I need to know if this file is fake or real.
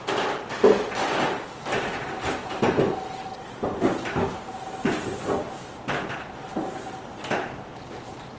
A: real